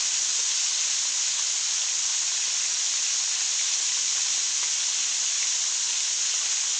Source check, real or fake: real